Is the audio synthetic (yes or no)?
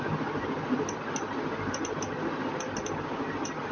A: no